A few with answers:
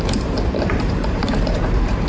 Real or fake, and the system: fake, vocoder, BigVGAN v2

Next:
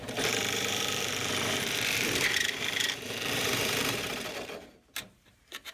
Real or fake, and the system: fake, vocoder, BigVGAN v2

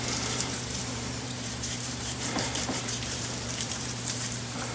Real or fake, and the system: fake, vocoder, BigVGAN v2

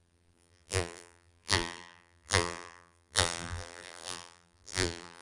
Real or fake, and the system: fake, vocoder, BigVGAN v2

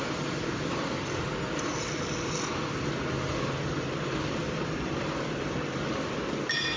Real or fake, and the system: real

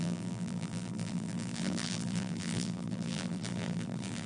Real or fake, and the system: fake, vocoder, BigVGAN v2